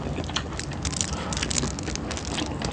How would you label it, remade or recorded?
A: recorded